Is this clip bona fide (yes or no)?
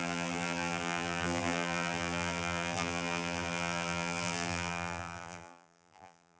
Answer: no